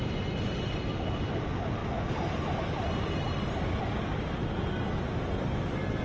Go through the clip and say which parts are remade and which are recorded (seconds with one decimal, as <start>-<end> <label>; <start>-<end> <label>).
0.0-6.0 recorded